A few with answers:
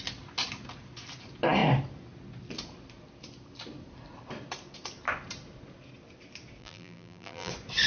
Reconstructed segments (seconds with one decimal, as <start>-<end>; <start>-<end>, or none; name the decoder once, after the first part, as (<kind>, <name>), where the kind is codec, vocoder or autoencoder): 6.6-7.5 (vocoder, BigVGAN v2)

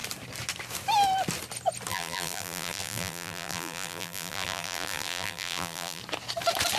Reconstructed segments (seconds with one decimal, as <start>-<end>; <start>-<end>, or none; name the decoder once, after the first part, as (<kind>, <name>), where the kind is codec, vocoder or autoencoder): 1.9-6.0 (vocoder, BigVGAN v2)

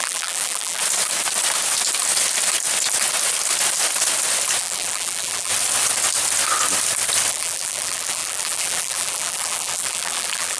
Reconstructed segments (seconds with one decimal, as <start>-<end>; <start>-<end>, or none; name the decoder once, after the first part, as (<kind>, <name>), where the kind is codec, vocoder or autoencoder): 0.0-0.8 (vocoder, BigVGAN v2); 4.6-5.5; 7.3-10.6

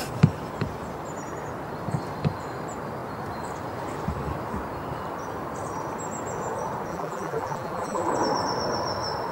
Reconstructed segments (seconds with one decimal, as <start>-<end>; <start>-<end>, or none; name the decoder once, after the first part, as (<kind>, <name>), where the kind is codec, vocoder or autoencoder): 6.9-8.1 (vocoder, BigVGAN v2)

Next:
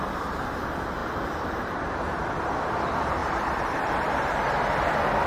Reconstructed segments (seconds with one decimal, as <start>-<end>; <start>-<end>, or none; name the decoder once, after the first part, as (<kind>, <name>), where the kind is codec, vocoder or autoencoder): 1.0-2.4 (vocoder, BigVGAN v2); 3.2-4.1

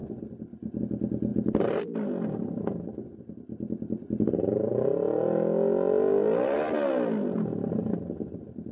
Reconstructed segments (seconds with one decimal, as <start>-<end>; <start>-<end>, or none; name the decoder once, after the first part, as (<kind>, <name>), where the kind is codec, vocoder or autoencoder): 1.3-2.6 (vocoder, BigVGAN v2)